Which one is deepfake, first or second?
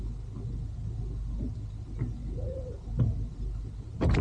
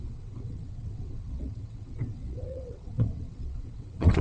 second